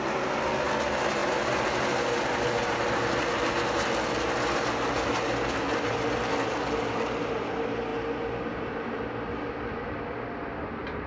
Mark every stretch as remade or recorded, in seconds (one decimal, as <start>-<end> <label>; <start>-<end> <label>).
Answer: 0.0-11.1 recorded